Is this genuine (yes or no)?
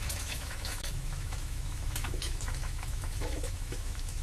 no